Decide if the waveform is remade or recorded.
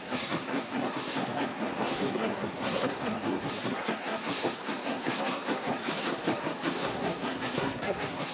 remade